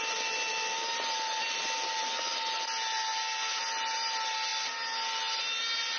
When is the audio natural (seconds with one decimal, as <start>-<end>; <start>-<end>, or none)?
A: 0.0-6.0